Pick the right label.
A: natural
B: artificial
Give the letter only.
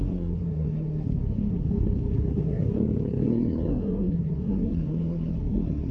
B